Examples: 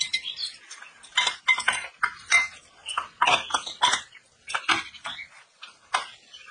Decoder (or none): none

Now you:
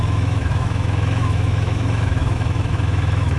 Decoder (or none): autoencoder, DAC-VAE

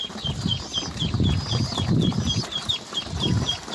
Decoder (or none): none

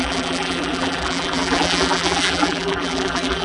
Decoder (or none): vocoder, BigVGAN v2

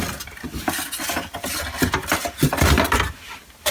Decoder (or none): none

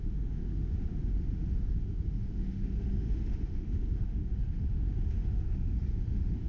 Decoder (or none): autoencoder, DAC-VAE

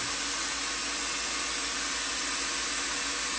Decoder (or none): none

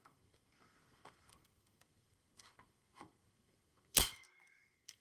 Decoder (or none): codec, SNAC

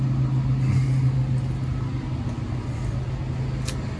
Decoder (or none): none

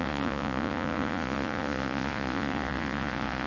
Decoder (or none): vocoder, Vocos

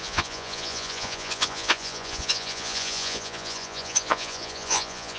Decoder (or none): vocoder, Vocos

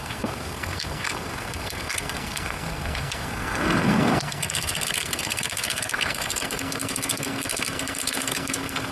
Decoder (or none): codec, SNAC